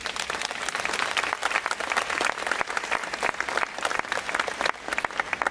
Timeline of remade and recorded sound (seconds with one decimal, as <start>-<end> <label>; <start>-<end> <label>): 0.0-5.5 recorded